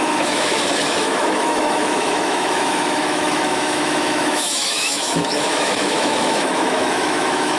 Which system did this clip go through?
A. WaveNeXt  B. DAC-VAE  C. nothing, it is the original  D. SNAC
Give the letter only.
B